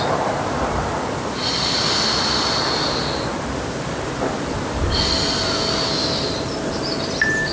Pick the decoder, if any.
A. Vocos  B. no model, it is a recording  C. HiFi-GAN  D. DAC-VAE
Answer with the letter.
B